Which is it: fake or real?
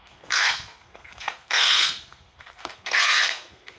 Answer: fake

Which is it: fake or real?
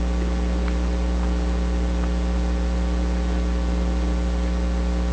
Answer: real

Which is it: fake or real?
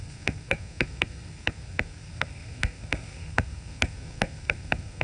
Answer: fake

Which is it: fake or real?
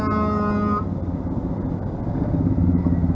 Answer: real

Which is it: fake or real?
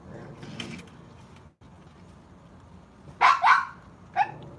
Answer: real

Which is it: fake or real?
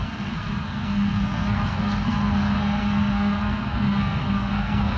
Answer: fake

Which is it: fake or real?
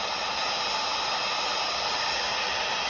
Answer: real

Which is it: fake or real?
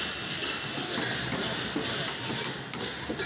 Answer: real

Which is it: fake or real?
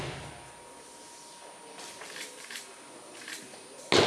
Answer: real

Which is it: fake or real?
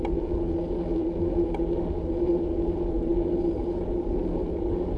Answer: real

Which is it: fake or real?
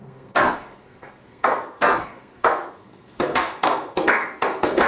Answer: fake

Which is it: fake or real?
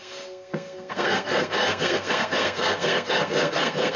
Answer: fake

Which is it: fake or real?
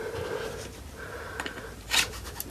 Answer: real